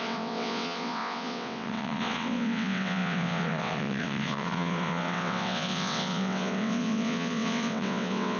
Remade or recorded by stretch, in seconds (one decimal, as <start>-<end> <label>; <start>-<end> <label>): 0.0-8.4 remade